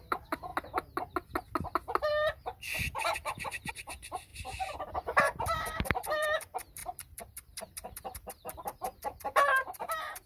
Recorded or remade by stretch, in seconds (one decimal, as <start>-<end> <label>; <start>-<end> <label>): 0.0-0.5 remade; 0.5-3.7 recorded; 3.7-4.3 remade; 4.3-5.2 recorded; 5.2-10.3 remade